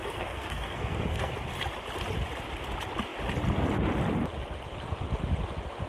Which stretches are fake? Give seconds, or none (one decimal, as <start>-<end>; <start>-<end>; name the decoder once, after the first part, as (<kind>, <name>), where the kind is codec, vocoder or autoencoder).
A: 0.0-1.3 (codec, SNAC)